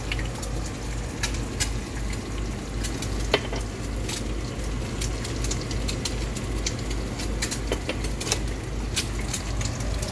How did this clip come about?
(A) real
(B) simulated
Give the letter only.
A